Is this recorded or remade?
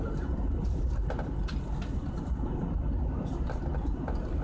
recorded